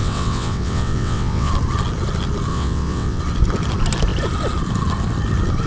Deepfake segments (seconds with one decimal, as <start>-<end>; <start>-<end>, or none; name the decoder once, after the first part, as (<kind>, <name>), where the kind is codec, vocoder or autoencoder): 0.0-1.5 (vocoder, WaveNeXt); 2.5-3.2